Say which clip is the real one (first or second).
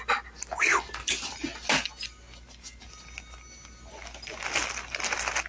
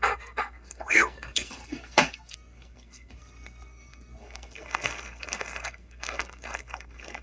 first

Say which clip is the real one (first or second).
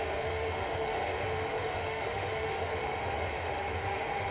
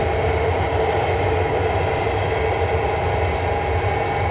second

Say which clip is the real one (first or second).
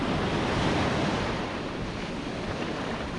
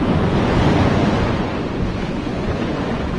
first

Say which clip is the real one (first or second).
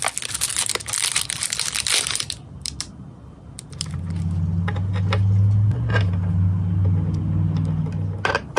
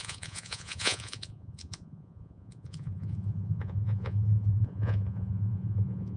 first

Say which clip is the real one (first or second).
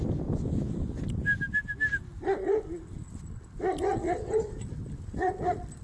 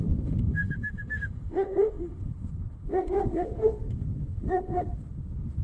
first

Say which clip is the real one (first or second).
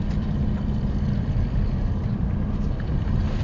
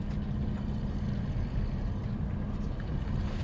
second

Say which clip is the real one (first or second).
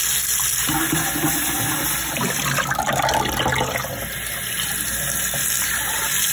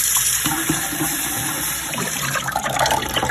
first